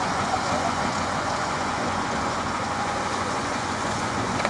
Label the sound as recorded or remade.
remade